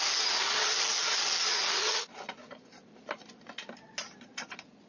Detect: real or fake real